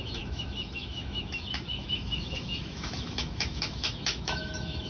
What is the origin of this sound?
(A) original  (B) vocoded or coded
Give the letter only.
B